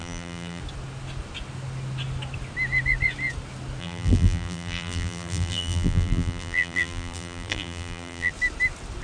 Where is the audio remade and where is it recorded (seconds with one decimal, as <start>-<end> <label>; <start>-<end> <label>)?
0.0-0.6 remade; 0.6-3.8 recorded; 3.8-8.3 remade; 8.3-9.0 recorded